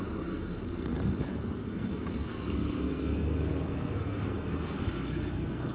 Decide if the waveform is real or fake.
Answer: fake